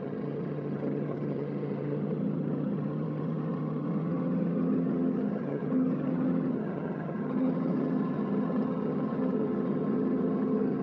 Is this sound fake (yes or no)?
yes